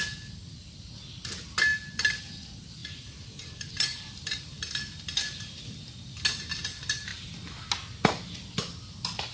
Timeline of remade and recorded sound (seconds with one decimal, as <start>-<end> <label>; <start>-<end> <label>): 0.0-1.7 recorded; 1.7-2.3 remade; 2.3-2.8 recorded; 2.8-4.4 remade; 4.4-7.1 recorded; 7.1-7.7 remade; 7.7-9.3 recorded